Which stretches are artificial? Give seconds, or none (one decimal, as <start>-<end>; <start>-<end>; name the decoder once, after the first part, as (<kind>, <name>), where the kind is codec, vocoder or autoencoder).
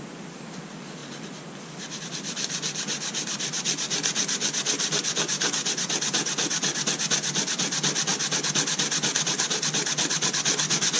none